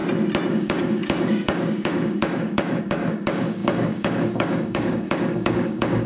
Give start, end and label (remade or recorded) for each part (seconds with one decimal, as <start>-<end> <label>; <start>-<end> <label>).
0.0-0.5 recorded; 0.5-6.1 remade